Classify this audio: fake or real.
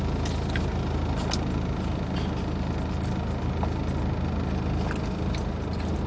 real